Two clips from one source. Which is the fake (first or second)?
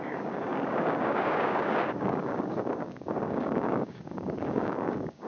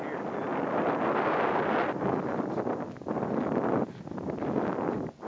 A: first